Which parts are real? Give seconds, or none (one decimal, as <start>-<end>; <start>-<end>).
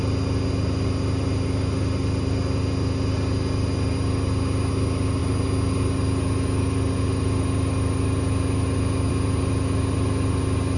0.0-10.8